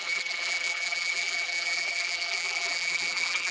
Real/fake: fake